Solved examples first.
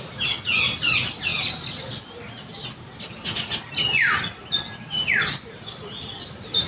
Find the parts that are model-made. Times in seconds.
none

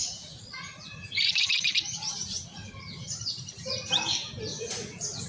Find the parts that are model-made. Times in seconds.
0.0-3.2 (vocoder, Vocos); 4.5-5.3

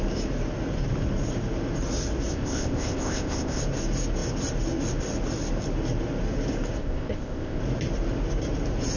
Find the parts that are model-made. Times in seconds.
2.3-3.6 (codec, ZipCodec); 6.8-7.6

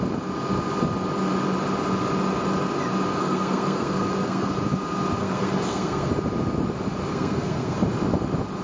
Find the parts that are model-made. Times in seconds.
3.2-4.5 (codec, SNAC); 5.2-6.1; 7.1-7.8

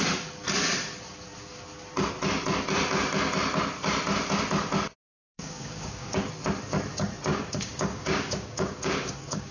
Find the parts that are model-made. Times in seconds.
5.2-6.2 (codec, DAC); 7.3-9.5

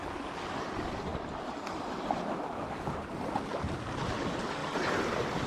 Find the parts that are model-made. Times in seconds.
none

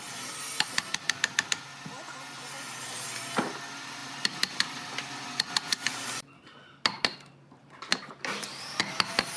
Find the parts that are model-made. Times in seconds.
4.0-4.9 (vocoder, BigVGAN v2); 7.6-8.8

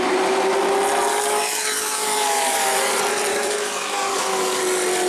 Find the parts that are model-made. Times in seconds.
1.1-2.7 (codec, DAC); 3.3-4.6